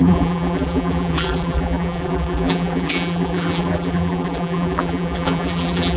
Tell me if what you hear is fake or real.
fake